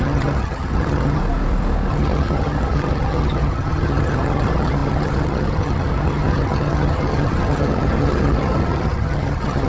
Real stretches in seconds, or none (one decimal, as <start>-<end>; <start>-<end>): 1.2-1.9